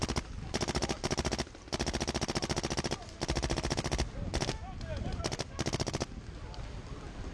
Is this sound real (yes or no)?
yes